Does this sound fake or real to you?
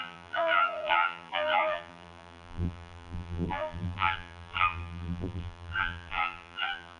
fake